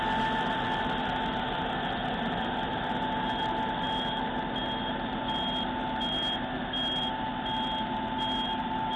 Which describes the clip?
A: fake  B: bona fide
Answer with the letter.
B